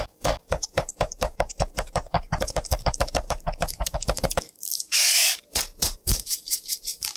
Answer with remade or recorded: remade